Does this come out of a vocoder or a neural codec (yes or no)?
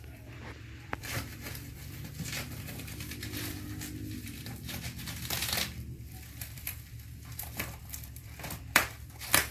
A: yes